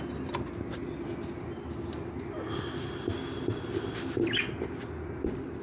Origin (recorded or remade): recorded